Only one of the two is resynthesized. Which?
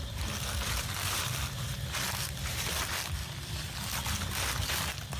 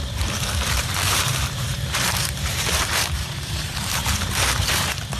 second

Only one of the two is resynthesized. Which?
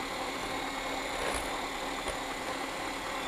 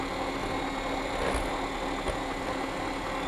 first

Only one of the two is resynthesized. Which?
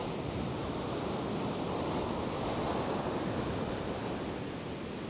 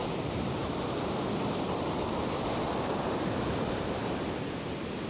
second